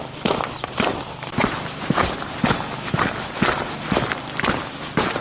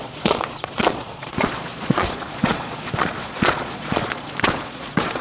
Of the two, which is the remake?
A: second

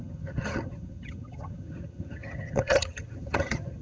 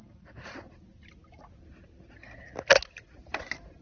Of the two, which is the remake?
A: first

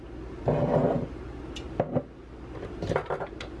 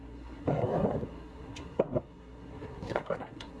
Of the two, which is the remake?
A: second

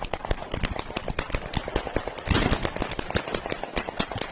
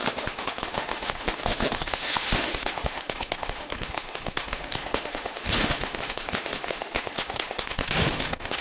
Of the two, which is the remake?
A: second